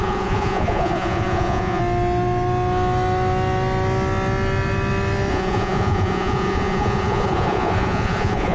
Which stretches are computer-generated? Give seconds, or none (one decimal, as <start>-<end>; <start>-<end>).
0.0-1.8; 5.3-8.5